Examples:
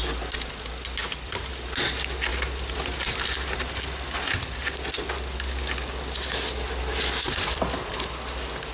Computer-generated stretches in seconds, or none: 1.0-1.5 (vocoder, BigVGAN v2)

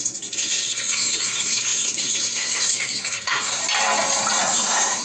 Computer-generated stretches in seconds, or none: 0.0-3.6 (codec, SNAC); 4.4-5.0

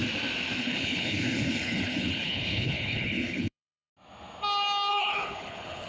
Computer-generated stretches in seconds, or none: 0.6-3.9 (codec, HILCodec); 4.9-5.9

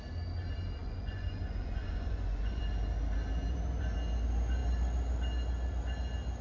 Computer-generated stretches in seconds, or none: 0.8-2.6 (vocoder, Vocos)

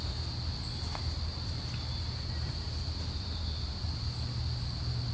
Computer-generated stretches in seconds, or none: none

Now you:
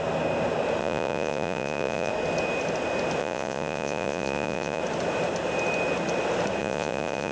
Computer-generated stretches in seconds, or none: 0.8-2.1 (vocoder, Vocos); 3.2-4.8; 6.6-7.3

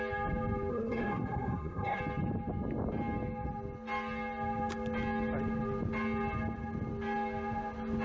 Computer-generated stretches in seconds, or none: 0.7-2.0 (codec, SNAC)